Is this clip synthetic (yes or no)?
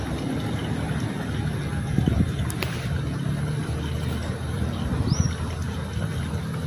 no